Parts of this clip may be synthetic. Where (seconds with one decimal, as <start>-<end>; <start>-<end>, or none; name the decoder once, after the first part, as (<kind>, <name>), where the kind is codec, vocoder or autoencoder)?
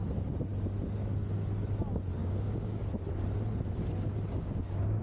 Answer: 2.2-2.8 (codec, DAC); 4.3-5.0